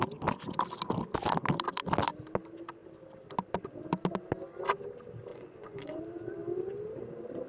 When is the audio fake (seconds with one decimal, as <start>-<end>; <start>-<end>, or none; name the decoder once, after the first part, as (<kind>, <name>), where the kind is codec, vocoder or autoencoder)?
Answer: 5.3-6.0 (vocoder, Vocos)

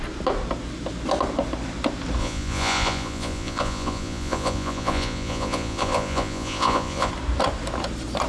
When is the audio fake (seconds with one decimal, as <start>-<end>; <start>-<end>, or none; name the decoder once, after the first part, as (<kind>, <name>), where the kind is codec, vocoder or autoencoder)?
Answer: 2.2-7.1 (vocoder, Vocos)

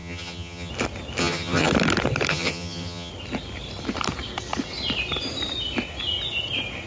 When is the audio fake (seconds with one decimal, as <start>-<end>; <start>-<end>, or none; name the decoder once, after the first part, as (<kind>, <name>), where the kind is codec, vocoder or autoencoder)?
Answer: 0.0-0.7 (vocoder, HiFi-GAN); 1.2-1.7; 2.3-3.1

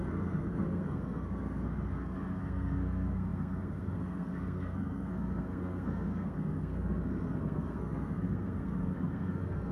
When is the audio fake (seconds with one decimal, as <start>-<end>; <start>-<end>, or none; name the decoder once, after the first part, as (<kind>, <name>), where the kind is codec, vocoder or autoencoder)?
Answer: 0.0-9.7 (codec, SNAC)

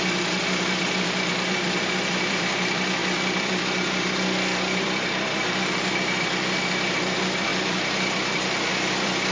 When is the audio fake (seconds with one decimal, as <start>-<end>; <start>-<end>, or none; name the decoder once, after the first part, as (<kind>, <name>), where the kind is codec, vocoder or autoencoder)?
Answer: 0.0-9.3 (vocoder, BigVGAN v2)

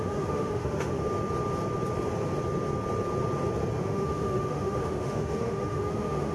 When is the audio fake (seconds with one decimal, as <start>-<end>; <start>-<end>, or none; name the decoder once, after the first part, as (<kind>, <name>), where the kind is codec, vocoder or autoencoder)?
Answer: 0.0-1.0 (autoencoder, DAC-VAE); 3.8-6.3